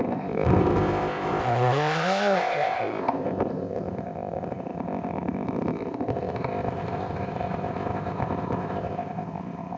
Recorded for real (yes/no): no